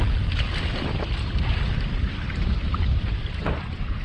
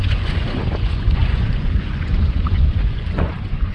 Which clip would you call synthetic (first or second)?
second